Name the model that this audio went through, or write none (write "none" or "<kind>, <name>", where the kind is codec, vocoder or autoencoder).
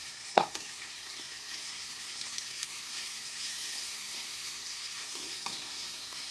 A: codec, SNAC